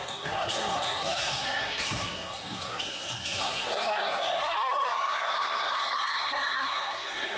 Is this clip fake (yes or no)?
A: yes